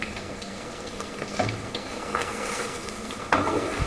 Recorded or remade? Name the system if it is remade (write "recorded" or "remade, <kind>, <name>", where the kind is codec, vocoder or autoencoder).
remade, codec, SNAC